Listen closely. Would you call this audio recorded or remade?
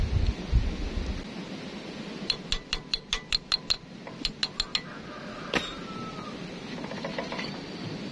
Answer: recorded